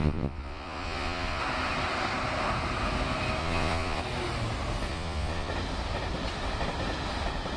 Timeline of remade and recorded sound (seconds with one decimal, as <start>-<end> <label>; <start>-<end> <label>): 0.0-1.4 remade; 1.4-3.4 recorded; 3.4-4.0 remade; 4.0-4.9 recorded; 4.9-5.5 remade; 5.5-7.6 recorded

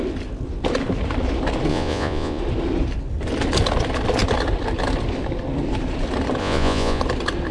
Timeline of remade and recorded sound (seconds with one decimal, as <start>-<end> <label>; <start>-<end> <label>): 0.0-1.7 recorded; 1.7-2.4 remade; 2.4-6.4 recorded; 6.4-7.0 remade; 7.0-7.5 recorded

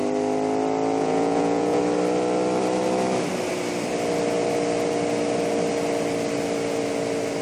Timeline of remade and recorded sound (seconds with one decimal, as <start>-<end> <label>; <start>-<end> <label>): 0.0-1.0 recorded; 1.0-1.8 remade; 1.8-7.4 recorded

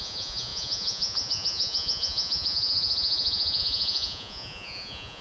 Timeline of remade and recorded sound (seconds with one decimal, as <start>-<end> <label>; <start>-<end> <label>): 0.0-5.2 remade

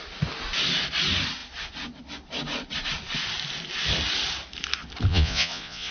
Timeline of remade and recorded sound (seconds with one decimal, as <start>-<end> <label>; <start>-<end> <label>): 0.0-5.1 recorded; 5.1-5.9 remade